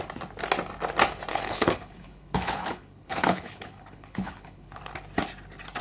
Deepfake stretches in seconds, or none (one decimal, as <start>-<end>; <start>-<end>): 1.3-4.8